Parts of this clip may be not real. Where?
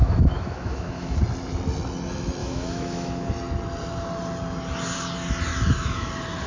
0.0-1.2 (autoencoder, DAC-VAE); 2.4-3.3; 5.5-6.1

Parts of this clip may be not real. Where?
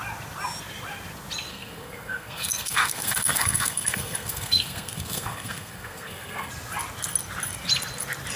1.5-6.5 (codec, SNAC)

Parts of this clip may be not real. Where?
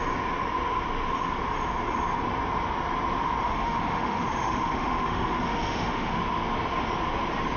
3.4-6.2 (autoencoder, DAC-VAE)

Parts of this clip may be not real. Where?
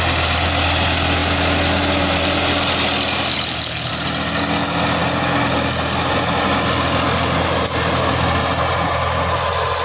3.3-3.9 (codec, HILCodec)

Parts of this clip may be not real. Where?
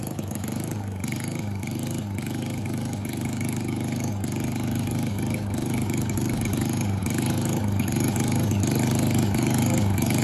0.0-10.2 (codec, DAC)